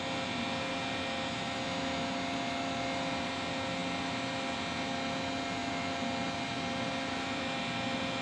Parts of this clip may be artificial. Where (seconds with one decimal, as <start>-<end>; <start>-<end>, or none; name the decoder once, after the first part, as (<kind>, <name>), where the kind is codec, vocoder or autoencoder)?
none

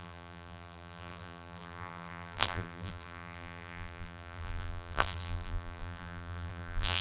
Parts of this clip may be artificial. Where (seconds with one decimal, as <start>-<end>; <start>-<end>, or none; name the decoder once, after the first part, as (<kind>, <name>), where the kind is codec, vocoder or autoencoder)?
0.0-7.0 (vocoder, BigVGAN v2)

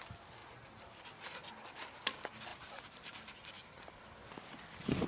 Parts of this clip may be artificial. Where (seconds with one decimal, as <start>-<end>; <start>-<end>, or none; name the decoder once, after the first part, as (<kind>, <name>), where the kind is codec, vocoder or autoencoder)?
0.4-1.0 (vocoder, BigVGAN v2); 2.5-4.1

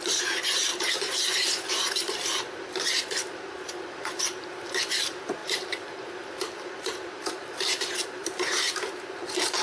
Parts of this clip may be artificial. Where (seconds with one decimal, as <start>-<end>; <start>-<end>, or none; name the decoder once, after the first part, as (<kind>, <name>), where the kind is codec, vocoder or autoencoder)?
0.0-9.6 (vocoder, BigVGAN v2)

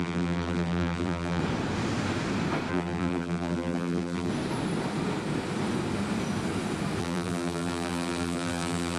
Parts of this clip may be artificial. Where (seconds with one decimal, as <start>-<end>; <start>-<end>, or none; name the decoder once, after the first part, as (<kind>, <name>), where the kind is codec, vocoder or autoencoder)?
0.0-1.4 (vocoder, BigVGAN v2); 2.7-4.3; 7.0-9.0

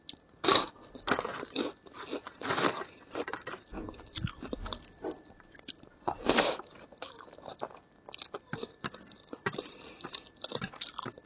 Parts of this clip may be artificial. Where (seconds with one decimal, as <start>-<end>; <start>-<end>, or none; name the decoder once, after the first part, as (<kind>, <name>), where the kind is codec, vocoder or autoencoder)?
3.7-7.2 (vocoder, BigVGAN v2)

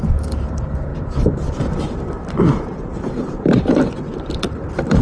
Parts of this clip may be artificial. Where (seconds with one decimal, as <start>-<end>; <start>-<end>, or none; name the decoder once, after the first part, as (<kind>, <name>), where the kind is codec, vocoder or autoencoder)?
0.0-5.0 (vocoder, BigVGAN v2)

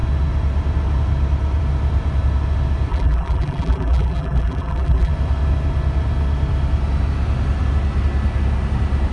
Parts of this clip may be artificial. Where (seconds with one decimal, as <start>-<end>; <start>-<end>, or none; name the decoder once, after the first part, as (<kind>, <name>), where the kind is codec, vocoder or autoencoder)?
2.9-5.1 (vocoder, BigVGAN v2)